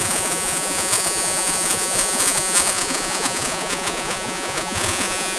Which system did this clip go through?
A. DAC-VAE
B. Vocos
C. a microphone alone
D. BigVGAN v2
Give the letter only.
B